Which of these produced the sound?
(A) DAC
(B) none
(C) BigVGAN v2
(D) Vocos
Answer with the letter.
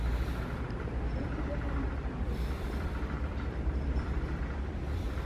C